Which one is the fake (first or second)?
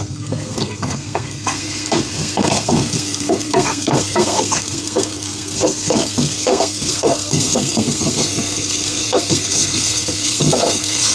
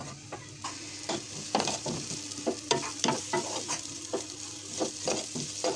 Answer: first